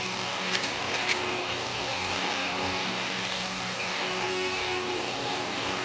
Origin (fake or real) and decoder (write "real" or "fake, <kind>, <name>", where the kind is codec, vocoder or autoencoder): fake, codec, DAC